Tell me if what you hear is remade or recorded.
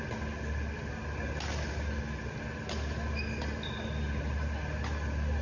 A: recorded